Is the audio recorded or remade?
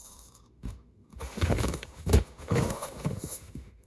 remade